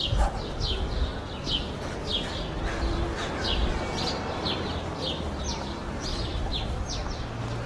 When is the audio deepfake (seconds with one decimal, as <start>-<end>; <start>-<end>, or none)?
none